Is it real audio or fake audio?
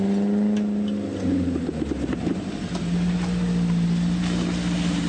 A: real